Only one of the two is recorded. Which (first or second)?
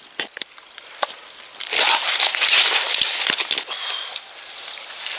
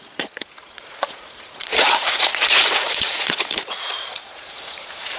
first